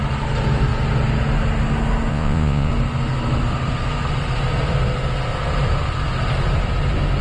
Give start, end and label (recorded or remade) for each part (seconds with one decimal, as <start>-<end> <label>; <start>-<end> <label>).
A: 0.0-2.1 recorded; 2.1-2.7 remade; 2.7-7.2 recorded